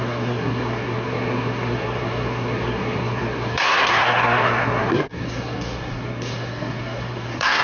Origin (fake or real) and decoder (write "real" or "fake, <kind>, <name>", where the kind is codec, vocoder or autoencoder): fake, codec, SNAC